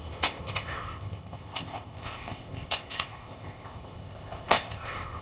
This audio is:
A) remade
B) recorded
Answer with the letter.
A